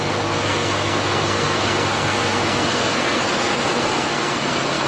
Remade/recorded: remade